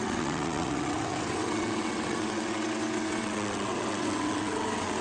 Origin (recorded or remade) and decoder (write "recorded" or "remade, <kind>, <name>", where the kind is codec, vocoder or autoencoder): remade, vocoder, WaveNeXt